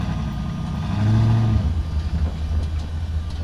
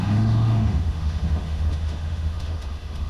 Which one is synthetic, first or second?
second